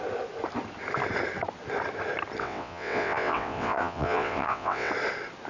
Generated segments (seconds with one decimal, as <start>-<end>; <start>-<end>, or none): 2.4-4.9